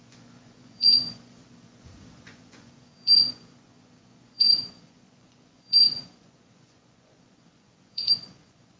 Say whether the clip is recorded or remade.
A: remade